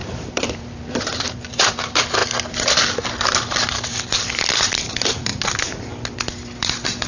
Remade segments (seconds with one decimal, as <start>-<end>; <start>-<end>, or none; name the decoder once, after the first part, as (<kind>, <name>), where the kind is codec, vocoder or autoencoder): 0.0-2.2 (vocoder, BigVGAN v2); 4.5-5.3; 6.6-7.1